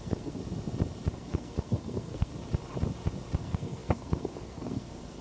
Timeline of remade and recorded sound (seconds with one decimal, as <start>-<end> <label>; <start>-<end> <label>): 0.0-0.4 remade; 0.4-1.1 recorded; 1.1-2.3 remade; 2.3-3.4 recorded; 3.4-5.2 remade